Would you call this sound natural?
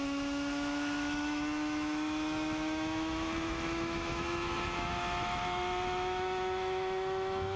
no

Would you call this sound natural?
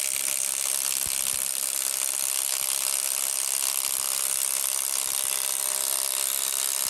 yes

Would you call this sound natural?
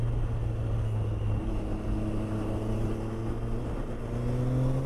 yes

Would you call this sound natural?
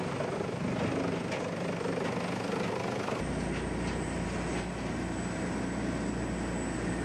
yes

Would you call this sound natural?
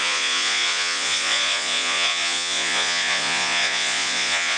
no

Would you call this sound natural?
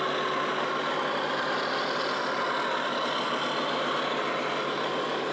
yes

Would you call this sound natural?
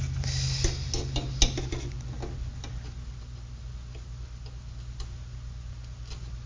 yes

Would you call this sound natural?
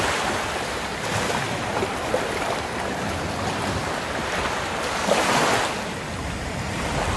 yes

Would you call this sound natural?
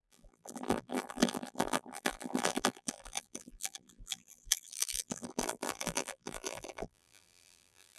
no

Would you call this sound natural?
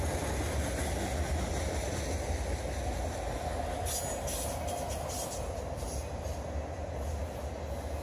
yes